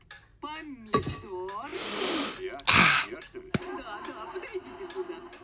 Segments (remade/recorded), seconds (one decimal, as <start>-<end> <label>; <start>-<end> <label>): 0.0-5.4 recorded